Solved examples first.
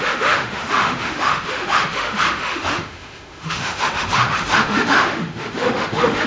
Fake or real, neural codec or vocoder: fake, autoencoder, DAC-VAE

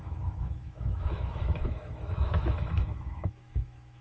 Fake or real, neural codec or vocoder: fake, autoencoder, DAC-VAE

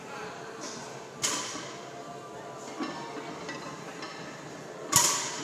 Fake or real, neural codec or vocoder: real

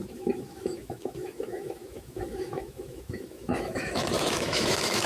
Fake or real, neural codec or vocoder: fake, autoencoder, DAC-VAE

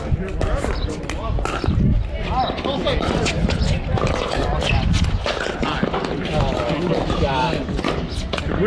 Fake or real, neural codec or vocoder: real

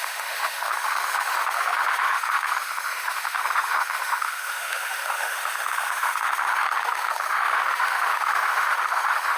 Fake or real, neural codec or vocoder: fake, autoencoder, DAC-VAE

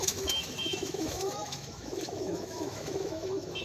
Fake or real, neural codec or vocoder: fake, autoencoder, DAC-VAE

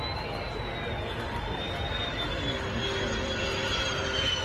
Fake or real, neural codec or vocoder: real